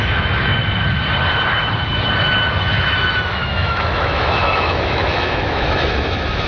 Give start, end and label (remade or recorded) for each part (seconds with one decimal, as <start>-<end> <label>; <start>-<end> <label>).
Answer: 0.0-0.5 remade; 0.5-2.5 recorded; 2.5-6.5 remade